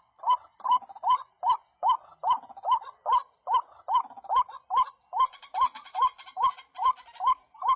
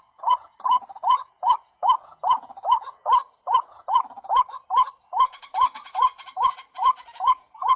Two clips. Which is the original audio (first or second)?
first